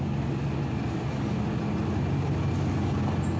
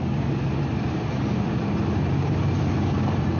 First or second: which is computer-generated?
second